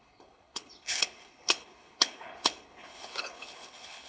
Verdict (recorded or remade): remade